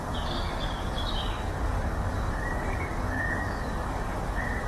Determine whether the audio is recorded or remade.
remade